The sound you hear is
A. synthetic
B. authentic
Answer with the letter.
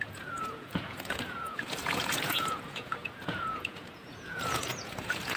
A